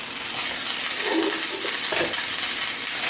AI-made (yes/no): no